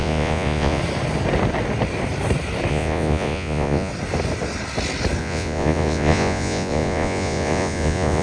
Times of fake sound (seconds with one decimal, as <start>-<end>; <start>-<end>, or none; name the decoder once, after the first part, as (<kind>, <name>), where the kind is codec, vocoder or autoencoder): 0.0-0.8 (vocoder, Vocos); 2.7-3.9; 5.2-8.2